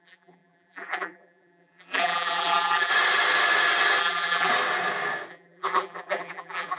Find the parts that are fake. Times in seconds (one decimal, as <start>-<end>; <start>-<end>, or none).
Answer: 0.0-2.9; 4.0-4.5; 5.3-6.8